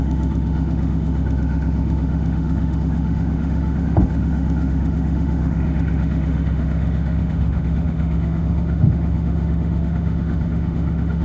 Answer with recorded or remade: remade